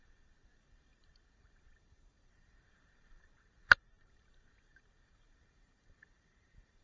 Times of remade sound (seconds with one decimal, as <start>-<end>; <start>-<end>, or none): 0.0-6.8